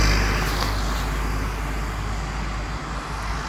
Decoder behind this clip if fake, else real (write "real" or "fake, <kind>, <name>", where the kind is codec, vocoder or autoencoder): real